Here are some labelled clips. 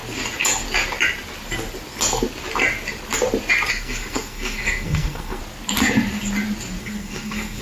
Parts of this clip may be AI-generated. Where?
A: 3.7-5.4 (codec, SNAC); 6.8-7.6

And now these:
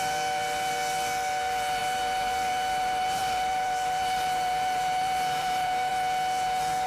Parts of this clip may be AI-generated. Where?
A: 1.8-5.9 (vocoder, BigVGAN v2)

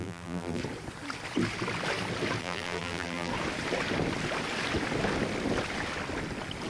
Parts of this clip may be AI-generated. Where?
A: 0.0-0.6 (vocoder, BigVGAN v2); 2.4-3.3

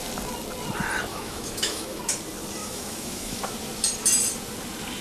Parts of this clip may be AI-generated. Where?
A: 1.1-2.0 (autoencoder, DAC-VAE); 2.6-3.4

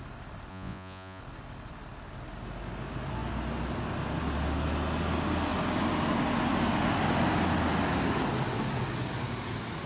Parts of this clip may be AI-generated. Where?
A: 0.5-1.2 (vocoder, Vocos)